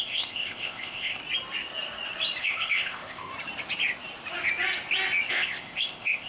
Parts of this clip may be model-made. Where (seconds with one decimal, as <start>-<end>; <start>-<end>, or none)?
0.0-1.2; 2.4-3.3; 5.3-6.3